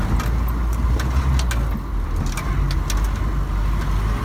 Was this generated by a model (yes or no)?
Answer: no